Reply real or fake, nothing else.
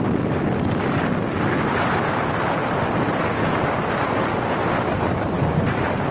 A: real